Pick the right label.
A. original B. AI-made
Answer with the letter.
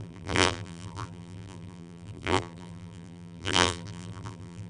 B